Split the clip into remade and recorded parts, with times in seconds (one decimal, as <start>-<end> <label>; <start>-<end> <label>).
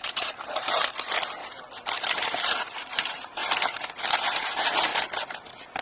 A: 0.0-1.4 remade; 1.4-2.5 recorded; 2.5-3.4 remade; 3.4-4.1 recorded; 4.1-4.9 remade; 4.9-5.8 recorded